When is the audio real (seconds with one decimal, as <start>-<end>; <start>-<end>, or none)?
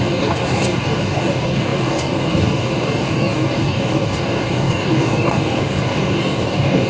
none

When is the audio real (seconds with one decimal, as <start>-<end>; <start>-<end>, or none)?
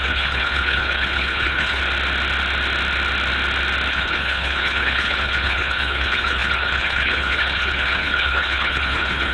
1.8-3.9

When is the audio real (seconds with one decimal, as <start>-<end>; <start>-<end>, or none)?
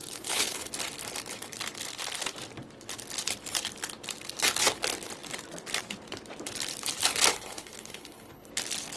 0.7-7.3; 8.5-9.0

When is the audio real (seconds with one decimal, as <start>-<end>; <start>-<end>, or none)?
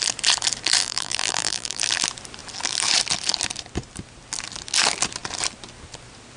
0.0-0.8; 1.8-6.4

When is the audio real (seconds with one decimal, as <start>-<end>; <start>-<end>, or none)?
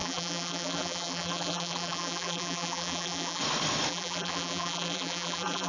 3.4-3.9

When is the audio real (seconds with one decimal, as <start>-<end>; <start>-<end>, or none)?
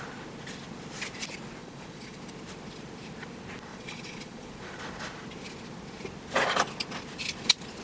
0.0-1.6; 2.2-3.7; 4.8-7.8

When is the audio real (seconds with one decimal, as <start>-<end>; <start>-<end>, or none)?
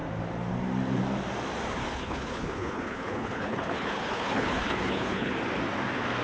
0.0-1.8; 5.3-6.2